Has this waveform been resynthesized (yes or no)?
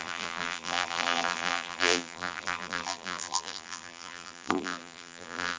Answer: yes